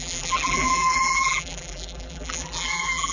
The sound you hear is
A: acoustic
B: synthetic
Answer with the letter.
B